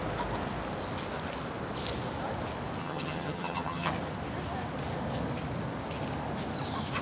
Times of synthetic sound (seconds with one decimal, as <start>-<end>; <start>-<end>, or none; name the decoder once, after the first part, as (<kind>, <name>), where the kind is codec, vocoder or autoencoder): 2.8-3.9 (vocoder, HiFi-GAN)